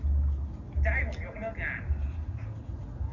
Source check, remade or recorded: recorded